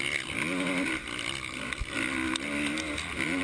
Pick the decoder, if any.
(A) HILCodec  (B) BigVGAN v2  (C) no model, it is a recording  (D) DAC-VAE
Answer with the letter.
C